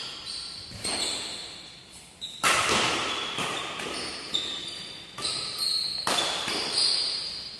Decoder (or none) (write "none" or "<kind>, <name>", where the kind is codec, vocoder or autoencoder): none